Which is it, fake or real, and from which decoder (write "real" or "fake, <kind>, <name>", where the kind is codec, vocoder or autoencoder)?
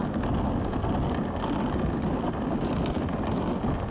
real